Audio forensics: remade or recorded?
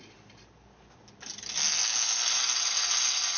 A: recorded